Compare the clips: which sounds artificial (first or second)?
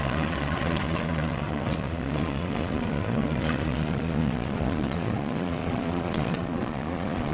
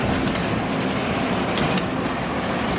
first